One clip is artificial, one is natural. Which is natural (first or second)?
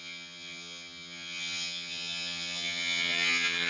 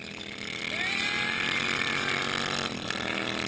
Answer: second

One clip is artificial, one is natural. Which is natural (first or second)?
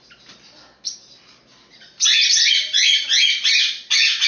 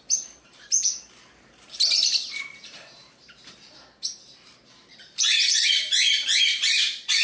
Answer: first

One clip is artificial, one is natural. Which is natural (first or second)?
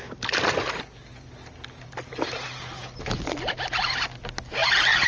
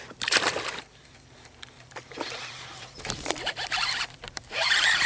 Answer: first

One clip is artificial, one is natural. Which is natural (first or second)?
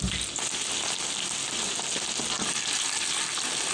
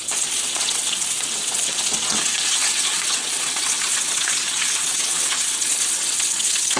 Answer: first